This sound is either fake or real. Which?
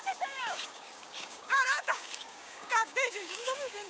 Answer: fake